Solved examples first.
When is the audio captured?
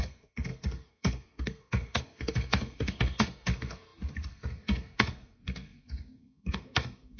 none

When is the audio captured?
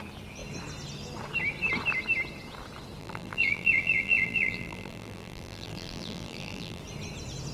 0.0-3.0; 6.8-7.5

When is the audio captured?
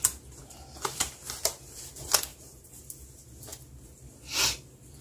0.0-0.4; 1.8-2.3; 2.8-5.0